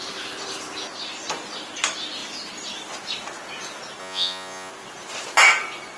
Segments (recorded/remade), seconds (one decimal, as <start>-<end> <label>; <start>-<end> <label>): 0.0-4.0 recorded; 4.0-4.7 remade; 4.7-6.0 recorded